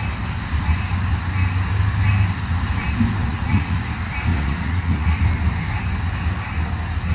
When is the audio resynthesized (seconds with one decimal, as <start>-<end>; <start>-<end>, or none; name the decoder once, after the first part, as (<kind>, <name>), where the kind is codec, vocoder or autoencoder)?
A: 3.3-3.8 (vocoder, Vocos); 4.3-5.2